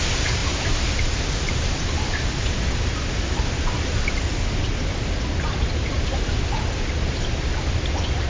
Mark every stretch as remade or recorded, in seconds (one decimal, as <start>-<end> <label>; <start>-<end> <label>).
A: 0.0-8.3 recorded